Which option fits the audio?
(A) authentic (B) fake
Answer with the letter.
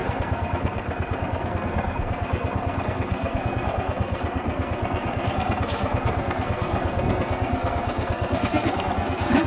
B